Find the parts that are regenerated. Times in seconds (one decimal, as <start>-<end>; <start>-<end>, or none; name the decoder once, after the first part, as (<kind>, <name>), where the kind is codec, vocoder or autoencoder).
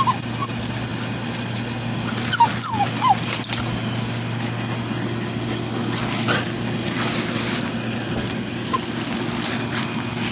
none